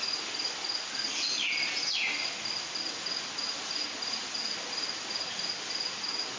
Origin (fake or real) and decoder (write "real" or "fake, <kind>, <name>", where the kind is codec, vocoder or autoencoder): real